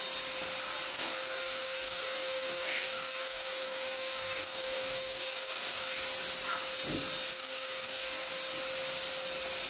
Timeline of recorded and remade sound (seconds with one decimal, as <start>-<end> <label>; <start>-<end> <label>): 0.0-0.9 recorded; 0.9-6.0 remade; 6.0-7.3 recorded; 7.3-8.3 remade; 8.3-9.7 recorded